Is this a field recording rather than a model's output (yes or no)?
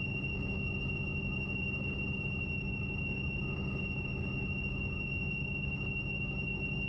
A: no